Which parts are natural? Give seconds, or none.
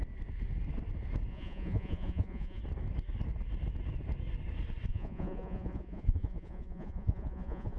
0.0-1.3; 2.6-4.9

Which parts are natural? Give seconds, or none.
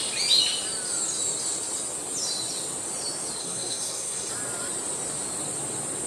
0.0-3.4; 4.3-6.1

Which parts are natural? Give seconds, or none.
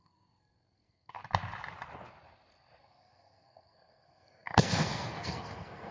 1.2-2.8